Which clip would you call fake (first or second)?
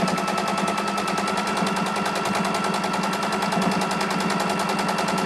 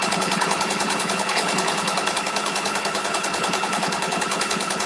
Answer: second